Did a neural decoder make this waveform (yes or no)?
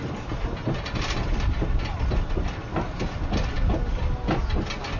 no